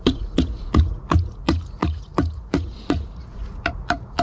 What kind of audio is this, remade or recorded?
remade